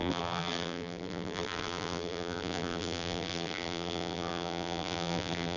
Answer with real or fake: fake